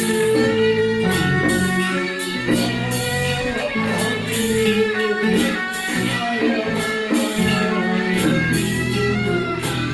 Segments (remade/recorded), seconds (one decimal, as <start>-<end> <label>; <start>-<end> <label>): 0.0-0.8 remade; 0.8-1.5 recorded; 1.5-9.9 remade